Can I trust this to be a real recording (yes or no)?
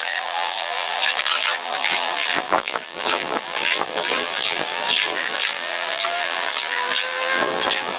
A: no